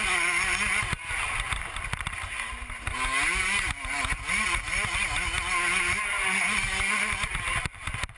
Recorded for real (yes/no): yes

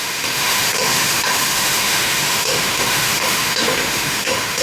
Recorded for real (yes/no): no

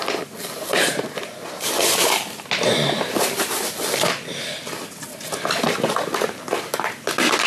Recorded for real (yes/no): yes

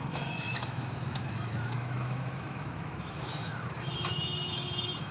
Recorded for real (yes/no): no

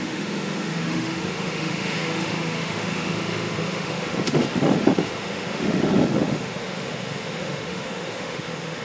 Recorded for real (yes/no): no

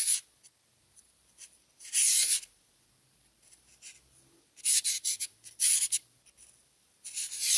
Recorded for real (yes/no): yes